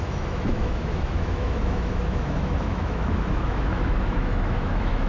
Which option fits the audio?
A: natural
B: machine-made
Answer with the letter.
B